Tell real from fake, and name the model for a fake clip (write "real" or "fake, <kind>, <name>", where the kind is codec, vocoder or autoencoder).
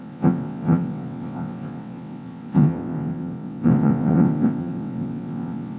fake, vocoder, WaveNeXt